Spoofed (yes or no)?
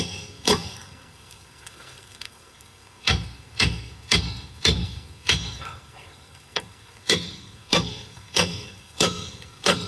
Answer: yes